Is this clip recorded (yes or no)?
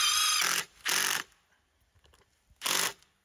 yes